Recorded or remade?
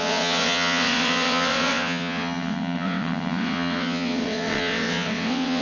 remade